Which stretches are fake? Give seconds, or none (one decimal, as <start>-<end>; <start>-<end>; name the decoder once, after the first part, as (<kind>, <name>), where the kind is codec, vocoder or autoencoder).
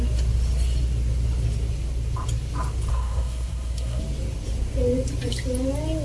2.9-4.0 (codec, SNAC)